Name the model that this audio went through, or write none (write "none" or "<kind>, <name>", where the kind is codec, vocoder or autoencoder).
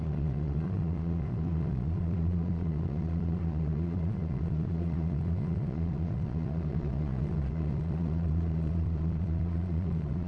vocoder, Vocos